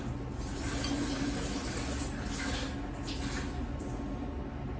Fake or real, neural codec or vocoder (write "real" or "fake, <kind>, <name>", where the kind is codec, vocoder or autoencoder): real